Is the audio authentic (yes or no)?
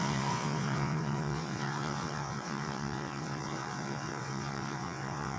no